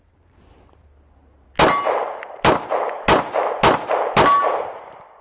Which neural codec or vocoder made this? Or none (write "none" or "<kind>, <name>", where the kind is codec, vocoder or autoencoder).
none